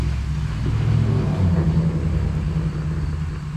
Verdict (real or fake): real